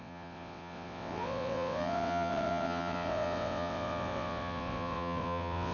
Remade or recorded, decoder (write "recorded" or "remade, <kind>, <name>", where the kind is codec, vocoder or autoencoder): remade, vocoder, WaveNeXt